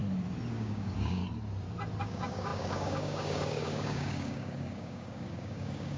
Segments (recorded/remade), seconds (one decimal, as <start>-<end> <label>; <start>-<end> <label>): 0.0-0.5 recorded; 0.5-1.2 remade; 1.2-2.0 recorded; 2.0-6.0 remade